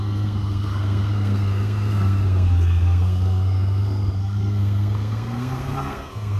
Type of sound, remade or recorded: remade